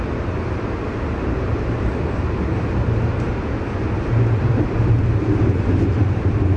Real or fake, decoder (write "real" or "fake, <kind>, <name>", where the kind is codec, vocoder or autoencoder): real